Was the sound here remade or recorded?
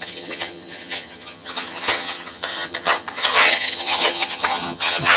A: remade